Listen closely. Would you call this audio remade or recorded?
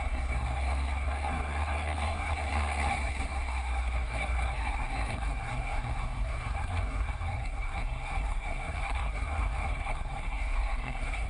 remade